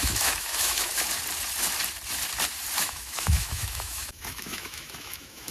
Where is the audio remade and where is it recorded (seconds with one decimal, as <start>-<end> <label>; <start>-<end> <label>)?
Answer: 0.0-0.9 remade; 0.9-2.8 recorded; 2.8-5.5 remade